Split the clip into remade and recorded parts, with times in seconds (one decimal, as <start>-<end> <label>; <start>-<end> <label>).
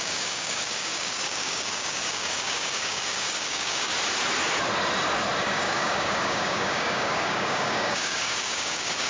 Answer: 0.0-3.9 remade; 3.9-5.4 recorded; 5.4-9.1 remade